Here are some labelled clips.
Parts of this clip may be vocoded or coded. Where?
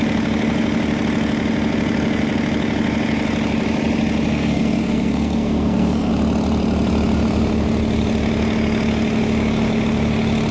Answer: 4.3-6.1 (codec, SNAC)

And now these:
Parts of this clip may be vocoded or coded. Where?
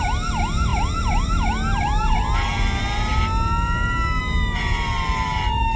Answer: none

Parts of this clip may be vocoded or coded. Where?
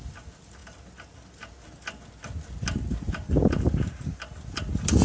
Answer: none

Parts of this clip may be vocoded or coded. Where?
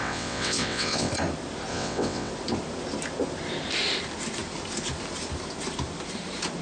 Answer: 0.0-1.1 (vocoder, WaveNeXt); 1.7-2.3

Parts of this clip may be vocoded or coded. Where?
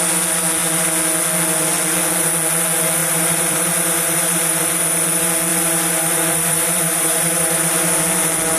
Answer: 3.0-4.8 (vocoder, BigVGAN v2); 5.5-7.9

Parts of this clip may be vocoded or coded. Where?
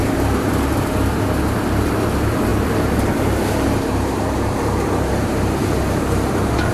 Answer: 0.0-6.7 (vocoder, BigVGAN v2)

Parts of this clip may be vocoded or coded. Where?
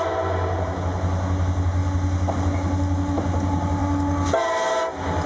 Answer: none